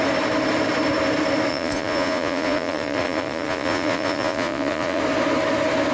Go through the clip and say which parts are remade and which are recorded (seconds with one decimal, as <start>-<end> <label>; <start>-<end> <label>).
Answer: 0.0-1.5 recorded; 1.5-5.0 remade; 5.0-5.9 recorded